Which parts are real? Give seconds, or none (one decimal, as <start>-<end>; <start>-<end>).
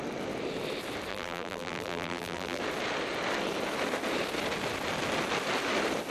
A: 0.0-1.1; 2.6-6.1